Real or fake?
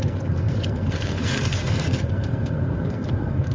fake